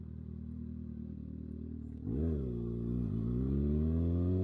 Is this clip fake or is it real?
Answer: real